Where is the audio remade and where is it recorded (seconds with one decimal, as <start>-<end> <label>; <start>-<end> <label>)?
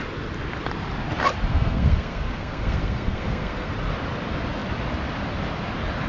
0.0-1.5 recorded; 1.5-3.7 remade; 3.7-6.1 recorded